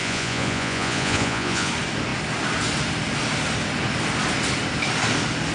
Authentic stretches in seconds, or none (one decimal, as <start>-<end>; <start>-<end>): 1.7-5.5